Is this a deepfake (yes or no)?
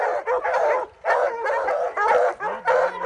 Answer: no